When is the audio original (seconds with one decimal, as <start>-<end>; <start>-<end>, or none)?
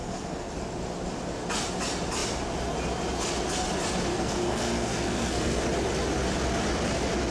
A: 0.5-4.1; 5.6-7.3